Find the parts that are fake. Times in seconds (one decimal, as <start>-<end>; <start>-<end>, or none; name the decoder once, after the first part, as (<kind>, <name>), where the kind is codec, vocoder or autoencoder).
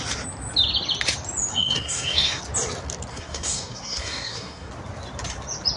1.5-2.4 (codec, SNAC); 3.1-4.7